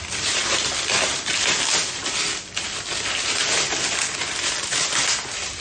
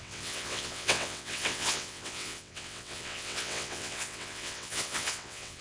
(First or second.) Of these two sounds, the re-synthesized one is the second